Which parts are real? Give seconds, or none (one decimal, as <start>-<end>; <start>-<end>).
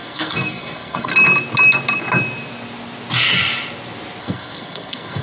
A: 1.1-4.2